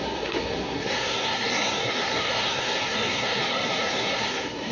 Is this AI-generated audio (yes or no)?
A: yes